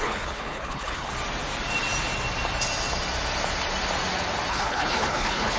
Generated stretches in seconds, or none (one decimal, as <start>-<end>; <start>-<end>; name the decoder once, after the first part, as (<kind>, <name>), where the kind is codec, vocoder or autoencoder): 0.0-1.1 (codec, HILCodec); 4.5-5.6

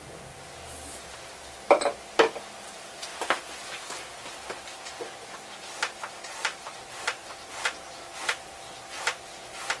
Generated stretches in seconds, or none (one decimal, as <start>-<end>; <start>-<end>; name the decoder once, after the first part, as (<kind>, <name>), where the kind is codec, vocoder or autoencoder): 3.1-4.8 (vocoder, BigVGAN v2); 6.5-7.5

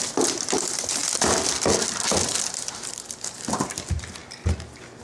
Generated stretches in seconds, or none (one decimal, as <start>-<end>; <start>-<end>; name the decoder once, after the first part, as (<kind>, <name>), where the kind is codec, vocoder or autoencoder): 2.2-3.0 (vocoder, BigVGAN v2)

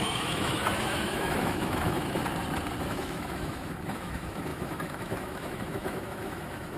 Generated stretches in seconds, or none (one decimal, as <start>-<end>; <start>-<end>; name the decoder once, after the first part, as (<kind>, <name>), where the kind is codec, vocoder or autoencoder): 0.0-2.2 (autoencoder, DAC-VAE); 2.8-6.8

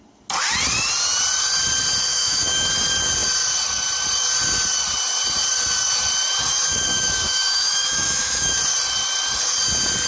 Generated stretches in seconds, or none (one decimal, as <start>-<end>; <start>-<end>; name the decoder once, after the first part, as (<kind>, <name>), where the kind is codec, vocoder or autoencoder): 2.1-2.7 (autoencoder, DAC-VAE); 6.9-8.5

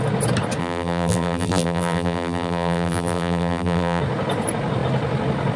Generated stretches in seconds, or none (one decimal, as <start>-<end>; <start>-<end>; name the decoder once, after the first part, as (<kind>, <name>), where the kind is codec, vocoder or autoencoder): 0.6-4.0 (vocoder, BigVGAN v2)

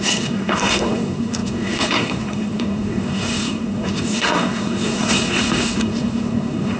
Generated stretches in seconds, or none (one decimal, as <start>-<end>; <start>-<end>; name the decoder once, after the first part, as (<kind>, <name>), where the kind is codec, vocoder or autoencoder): 0.0-6.8 (codec, SNAC)

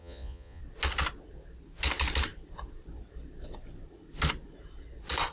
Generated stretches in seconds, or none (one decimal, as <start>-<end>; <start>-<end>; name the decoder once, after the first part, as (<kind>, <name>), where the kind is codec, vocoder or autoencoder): 0.0-0.6 (vocoder, Vocos)